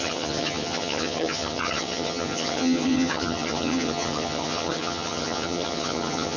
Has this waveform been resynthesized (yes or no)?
yes